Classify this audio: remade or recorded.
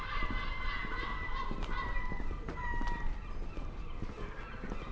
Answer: recorded